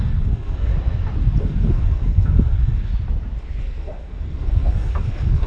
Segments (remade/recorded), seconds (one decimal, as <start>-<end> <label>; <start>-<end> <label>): 0.0-0.7 remade; 0.7-1.4 recorded; 1.4-2.9 remade; 2.9-3.6 recorded; 3.6-5.5 remade